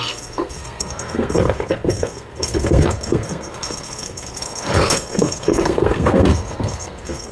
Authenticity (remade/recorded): remade